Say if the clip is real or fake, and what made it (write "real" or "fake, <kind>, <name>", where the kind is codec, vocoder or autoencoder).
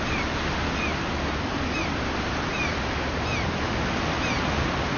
real